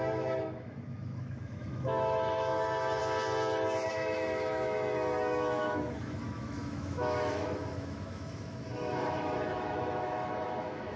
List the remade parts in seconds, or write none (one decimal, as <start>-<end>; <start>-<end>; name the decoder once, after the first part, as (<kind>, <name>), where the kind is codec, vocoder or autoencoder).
0.0-3.0 (autoencoder, DAC-VAE); 3.9-11.0